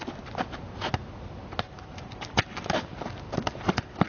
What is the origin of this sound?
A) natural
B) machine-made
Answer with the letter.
A